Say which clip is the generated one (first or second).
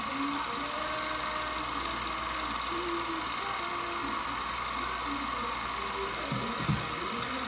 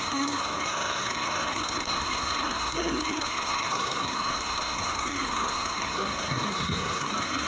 second